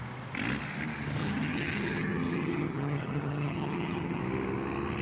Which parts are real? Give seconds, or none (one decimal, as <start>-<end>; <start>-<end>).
0.0-1.2; 4.2-5.0

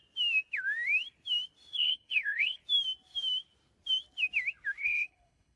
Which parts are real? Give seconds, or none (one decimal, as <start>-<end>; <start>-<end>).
0.0-1.7; 2.6-4.8

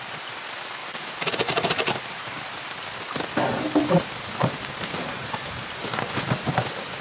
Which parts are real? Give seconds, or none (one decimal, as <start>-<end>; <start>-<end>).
0.0-0.8; 3.2-4.4; 5.8-7.0

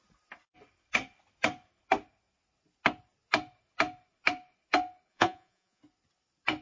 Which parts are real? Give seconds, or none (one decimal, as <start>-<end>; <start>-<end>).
0.0-5.1; 5.8-6.6

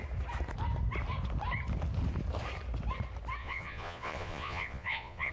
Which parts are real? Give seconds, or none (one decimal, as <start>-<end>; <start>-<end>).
0.0-3.4

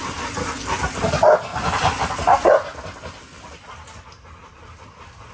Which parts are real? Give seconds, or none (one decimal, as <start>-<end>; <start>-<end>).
0.0-5.3

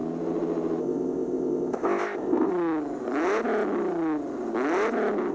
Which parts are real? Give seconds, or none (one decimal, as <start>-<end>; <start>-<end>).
0.0-0.8; 2.5-5.3